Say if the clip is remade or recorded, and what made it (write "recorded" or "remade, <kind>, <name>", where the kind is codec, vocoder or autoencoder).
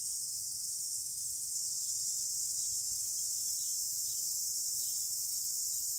remade, vocoder, BigVGAN v2